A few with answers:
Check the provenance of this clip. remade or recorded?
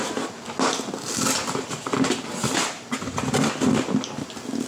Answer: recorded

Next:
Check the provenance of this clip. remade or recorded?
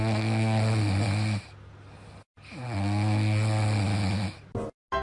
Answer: recorded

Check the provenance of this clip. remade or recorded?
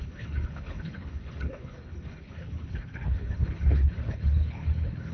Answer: remade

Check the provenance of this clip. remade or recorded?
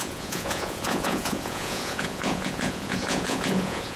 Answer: remade